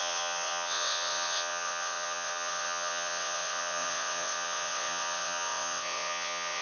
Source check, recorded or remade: remade